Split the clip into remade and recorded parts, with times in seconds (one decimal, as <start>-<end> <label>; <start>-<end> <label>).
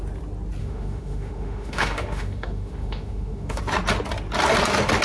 0.0-0.6 recorded; 0.6-3.6 remade; 3.6-5.0 recorded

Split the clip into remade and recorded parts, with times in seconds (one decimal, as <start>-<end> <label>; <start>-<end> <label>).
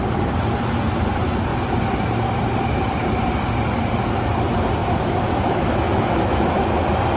0.0-4.8 recorded; 4.8-7.2 remade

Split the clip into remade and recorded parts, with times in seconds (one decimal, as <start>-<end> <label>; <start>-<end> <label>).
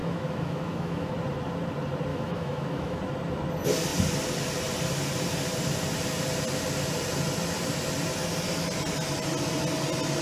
0.0-1.1 remade; 1.1-2.1 recorded; 2.1-3.0 remade; 3.0-10.2 recorded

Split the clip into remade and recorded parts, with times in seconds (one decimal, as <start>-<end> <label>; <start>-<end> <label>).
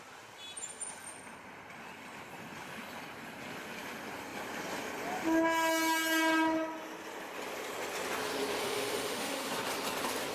0.0-8.6 recorded; 8.6-9.5 remade; 9.5-10.3 recorded